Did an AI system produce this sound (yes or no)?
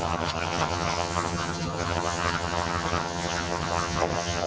yes